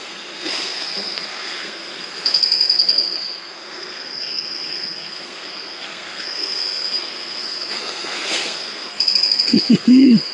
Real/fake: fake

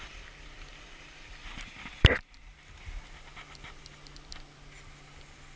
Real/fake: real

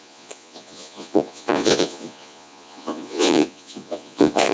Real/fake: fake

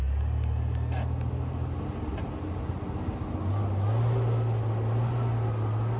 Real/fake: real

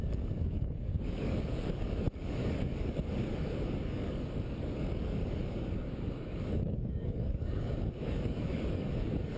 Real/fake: fake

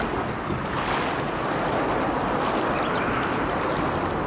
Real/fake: real